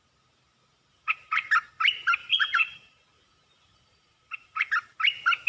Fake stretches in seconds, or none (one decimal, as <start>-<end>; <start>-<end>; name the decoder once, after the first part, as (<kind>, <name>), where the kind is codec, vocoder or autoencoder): 0.9-1.5 (vocoder, Vocos); 2.2-4.7

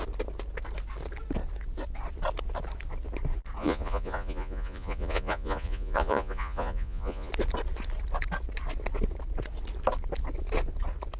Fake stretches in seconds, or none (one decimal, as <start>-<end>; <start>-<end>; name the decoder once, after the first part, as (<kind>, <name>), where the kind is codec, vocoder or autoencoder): 3.6-7.3 (vocoder, Vocos)

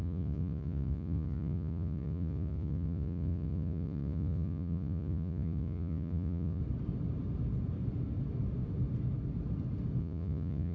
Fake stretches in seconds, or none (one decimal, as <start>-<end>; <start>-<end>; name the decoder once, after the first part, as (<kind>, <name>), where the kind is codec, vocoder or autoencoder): 0.0-6.6 (vocoder, Vocos); 10.0-10.7